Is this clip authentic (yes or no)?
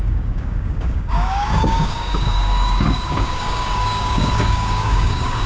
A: no